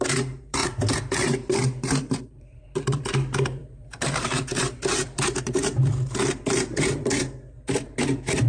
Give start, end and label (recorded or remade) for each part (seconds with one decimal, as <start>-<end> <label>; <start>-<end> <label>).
0.0-8.5 remade